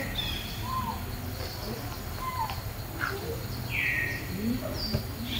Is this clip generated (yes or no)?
no